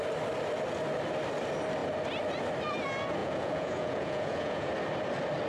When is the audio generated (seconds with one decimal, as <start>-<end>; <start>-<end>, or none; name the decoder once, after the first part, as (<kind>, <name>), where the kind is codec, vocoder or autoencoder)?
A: 3.2-4.7 (vocoder, Vocos)